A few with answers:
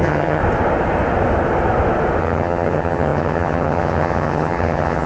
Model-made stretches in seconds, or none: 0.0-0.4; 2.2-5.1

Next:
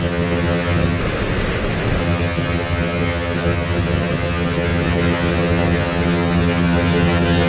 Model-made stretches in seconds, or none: 0.0-1.0; 2.0-7.5

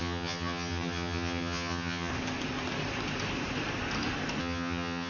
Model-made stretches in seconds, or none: 0.0-2.1; 4.4-5.1

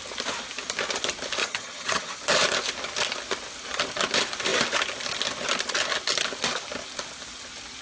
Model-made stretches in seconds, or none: 1.4-2.2